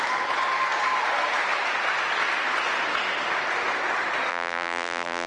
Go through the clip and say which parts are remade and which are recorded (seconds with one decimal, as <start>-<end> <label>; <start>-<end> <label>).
0.0-4.3 recorded; 4.3-5.3 remade